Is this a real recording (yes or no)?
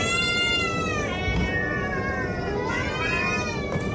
yes